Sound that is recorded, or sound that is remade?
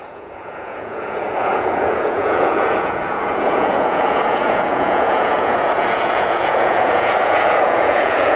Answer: remade